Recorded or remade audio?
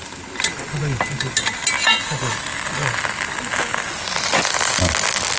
recorded